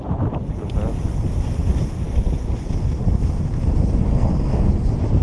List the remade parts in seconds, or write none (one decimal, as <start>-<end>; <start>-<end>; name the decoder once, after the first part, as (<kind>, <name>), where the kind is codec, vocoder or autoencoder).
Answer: 4.1-4.7 (codec, SNAC)